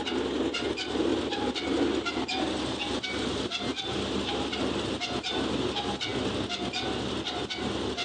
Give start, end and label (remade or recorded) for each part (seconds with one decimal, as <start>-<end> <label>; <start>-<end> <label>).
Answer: 0.0-8.0 recorded